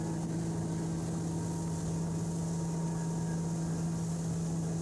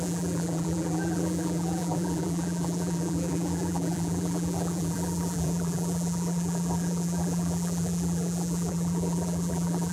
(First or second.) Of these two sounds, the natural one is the first